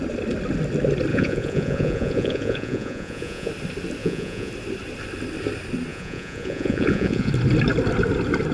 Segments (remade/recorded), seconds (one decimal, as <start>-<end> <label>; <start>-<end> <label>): 0.0-1.1 recorded; 1.1-3.5 remade; 3.5-4.0 recorded; 4.0-4.5 remade; 4.5-5.9 recorded; 5.9-7.3 remade; 7.3-8.5 recorded